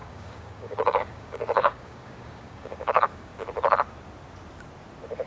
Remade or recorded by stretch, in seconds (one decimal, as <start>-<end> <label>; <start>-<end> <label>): 0.0-3.3 remade; 3.3-5.3 recorded